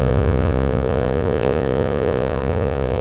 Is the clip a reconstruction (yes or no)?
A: yes